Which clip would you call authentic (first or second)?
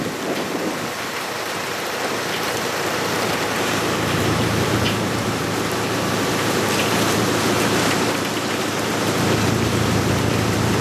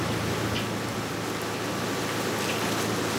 second